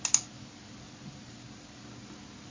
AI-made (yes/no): no